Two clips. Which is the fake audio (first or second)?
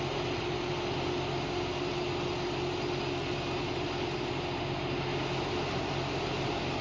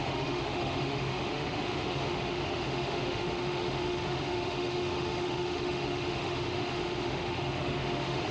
second